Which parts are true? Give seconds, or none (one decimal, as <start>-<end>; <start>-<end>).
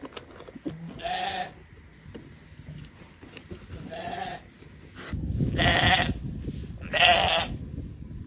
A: 0.0-8.3